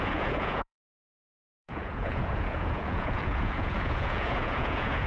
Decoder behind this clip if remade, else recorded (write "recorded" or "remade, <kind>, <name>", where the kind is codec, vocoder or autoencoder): remade, vocoder, Vocos